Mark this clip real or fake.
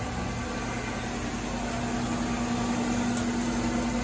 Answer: real